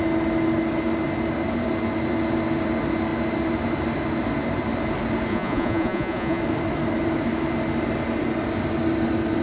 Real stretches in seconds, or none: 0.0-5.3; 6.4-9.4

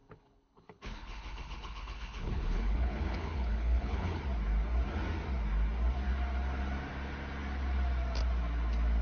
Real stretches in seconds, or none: 4.2-9.0